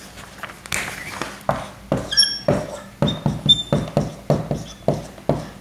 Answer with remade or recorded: recorded